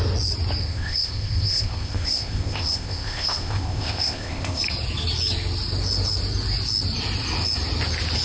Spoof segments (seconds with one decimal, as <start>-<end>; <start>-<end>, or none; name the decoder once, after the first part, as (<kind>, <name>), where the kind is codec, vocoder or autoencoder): 0.6-4.6 (codec, ZipCodec)